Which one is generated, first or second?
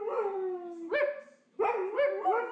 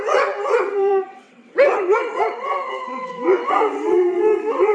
second